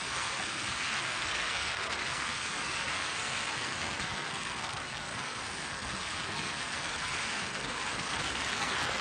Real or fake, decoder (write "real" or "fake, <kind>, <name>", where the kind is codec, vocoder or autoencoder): fake, codec, SNAC